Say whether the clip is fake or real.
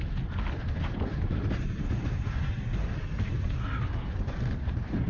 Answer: real